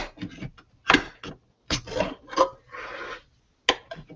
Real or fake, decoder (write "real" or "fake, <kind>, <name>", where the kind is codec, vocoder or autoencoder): real